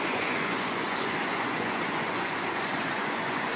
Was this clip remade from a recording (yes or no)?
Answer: yes